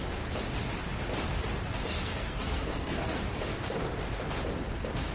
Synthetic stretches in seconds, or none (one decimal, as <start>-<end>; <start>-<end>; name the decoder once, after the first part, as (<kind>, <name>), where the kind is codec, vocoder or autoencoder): 1.9-3.2 (codec, SNAC)